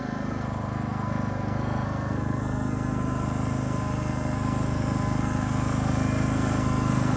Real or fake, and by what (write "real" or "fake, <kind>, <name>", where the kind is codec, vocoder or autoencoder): fake, codec, SNAC